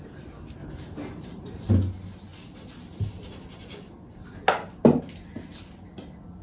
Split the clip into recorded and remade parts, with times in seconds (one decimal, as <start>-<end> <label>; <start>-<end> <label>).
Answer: 0.0-0.6 recorded; 0.6-1.7 remade; 1.7-6.4 recorded